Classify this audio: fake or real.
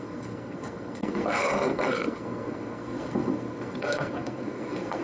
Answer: fake